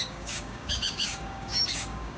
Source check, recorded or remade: remade